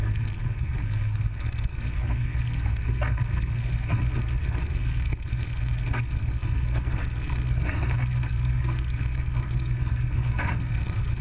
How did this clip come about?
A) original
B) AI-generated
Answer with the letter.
B